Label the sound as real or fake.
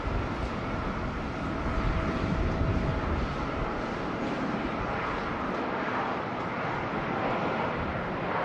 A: real